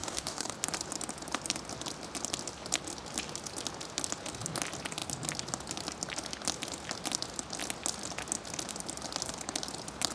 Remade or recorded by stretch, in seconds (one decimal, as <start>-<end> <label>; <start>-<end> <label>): 0.0-0.5 remade; 0.5-10.1 recorded

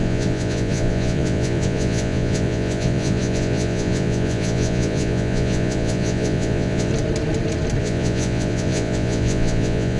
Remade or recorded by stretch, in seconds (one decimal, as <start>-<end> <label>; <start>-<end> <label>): 0.0-6.9 remade; 6.9-7.8 recorded; 7.8-10.0 remade

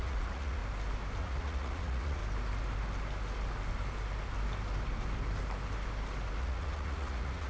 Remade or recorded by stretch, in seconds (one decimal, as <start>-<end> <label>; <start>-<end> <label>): 0.0-0.6 remade; 0.6-1.2 recorded; 1.2-2.2 remade; 2.2-6.4 recorded; 6.4-7.5 remade

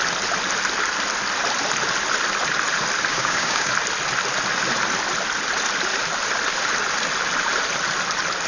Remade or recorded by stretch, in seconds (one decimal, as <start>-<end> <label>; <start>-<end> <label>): 0.0-3.1 recorded; 3.1-3.7 remade; 3.7-8.5 recorded

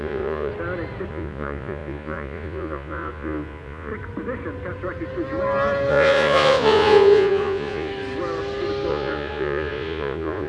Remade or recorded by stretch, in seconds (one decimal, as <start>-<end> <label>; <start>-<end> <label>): 0.0-0.5 remade; 0.5-1.1 recorded; 1.1-3.9 remade; 3.9-5.9 recorded; 5.9-7.9 remade; 7.9-8.9 recorded; 8.9-10.5 remade

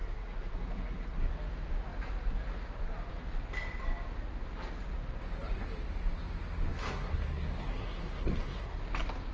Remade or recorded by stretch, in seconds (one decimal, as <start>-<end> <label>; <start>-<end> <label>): 0.0-1.3 remade; 1.3-6.7 recorded; 6.7-8.8 remade; 8.8-9.3 recorded